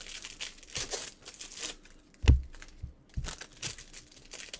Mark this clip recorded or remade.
recorded